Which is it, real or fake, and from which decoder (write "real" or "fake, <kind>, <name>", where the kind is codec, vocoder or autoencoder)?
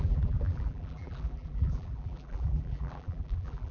fake, vocoder, BigVGAN v2